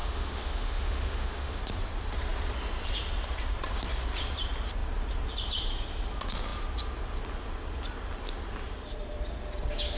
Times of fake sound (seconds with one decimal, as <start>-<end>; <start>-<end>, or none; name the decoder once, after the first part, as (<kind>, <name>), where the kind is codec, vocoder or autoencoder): 0.0-1.6 (autoencoder, DAC-VAE)